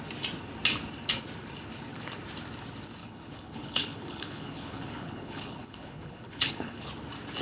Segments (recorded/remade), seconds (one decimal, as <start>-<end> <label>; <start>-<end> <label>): 0.0-3.0 recorded; 3.0-6.9 remade; 6.9-7.4 recorded